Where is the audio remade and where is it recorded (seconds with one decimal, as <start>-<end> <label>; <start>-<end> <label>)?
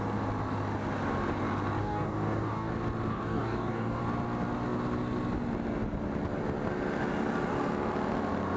0.0-1.8 recorded; 1.8-2.7 remade; 2.7-3.1 recorded; 3.1-4.0 remade; 4.0-8.6 recorded